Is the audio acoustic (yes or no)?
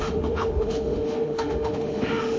no